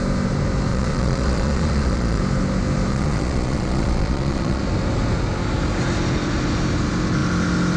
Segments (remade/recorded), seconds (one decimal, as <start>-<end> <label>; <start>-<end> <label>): 0.0-0.7 recorded; 0.7-2.2 remade; 2.2-2.9 recorded; 2.9-4.6 remade; 4.6-7.8 recorded